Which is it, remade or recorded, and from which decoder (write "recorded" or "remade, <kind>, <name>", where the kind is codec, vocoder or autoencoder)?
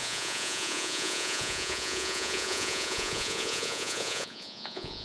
remade, vocoder, Vocos